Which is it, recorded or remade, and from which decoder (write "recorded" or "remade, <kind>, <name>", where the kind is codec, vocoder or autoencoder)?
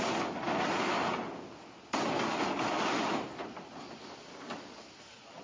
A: recorded